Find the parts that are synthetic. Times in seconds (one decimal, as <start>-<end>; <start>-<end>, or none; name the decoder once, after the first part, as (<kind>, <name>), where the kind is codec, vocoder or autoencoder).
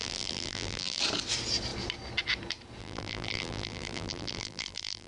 0.0-1.0 (vocoder, BigVGAN v2); 2.8-5.1